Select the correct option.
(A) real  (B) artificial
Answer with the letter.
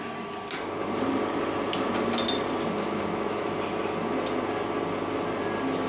A